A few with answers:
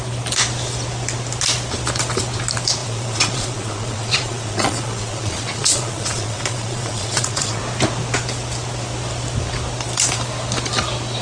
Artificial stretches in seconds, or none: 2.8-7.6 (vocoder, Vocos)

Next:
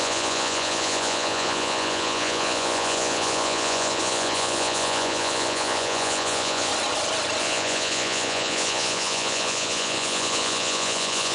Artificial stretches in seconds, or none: 0.0-6.7 (vocoder, Vocos); 7.4-11.3

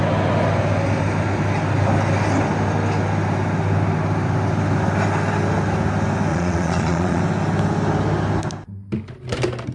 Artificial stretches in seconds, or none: 6.3-7.2 (vocoder, Vocos)

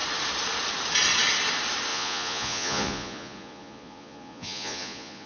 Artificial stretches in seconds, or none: 1.9-5.3 (vocoder, Vocos)

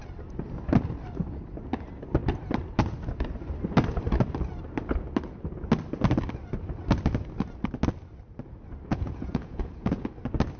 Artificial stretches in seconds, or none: 8.9-10.1 (vocoder, Vocos)